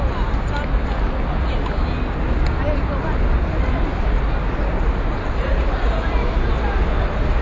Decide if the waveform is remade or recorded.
recorded